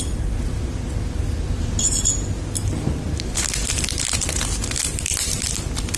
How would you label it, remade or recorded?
recorded